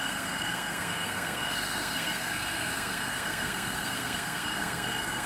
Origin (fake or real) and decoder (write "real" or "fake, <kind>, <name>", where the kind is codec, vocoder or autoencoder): fake, codec, SNAC